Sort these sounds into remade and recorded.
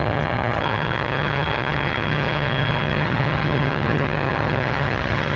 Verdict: remade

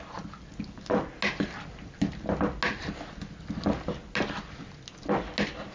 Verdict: recorded